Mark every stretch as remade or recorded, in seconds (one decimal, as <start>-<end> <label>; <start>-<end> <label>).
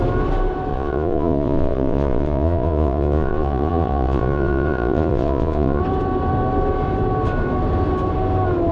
0.0-0.7 recorded; 0.7-5.8 remade; 5.8-8.7 recorded